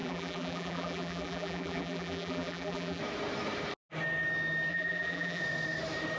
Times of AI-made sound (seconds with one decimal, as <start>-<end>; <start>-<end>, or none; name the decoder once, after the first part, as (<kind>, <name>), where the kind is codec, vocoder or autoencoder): 0.0-3.0 (vocoder, BigVGAN v2); 4.7-5.4

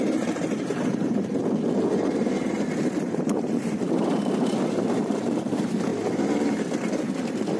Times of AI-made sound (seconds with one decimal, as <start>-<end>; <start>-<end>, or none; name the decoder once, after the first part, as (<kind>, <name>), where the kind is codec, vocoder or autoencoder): 0.0-1.4 (vocoder, BigVGAN v2); 2.1-5.9; 6.9-7.6

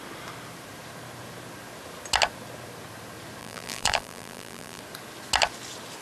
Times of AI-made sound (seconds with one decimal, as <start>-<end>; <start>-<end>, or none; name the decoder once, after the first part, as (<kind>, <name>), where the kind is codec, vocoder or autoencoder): 3.4-4.8 (vocoder, BigVGAN v2)

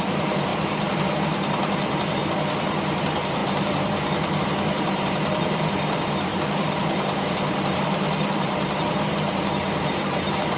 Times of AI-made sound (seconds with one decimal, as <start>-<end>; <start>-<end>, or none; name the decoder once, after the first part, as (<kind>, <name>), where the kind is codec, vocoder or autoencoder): 0.0-2.2 (vocoder, BigVGAN v2); 3.0-10.6

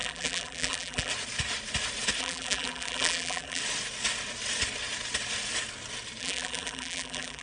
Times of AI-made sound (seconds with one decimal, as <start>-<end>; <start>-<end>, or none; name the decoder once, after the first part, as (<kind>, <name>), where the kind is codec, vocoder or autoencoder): 0.0-1.1 (vocoder, BigVGAN v2); 2.2-3.6; 6.2-7.4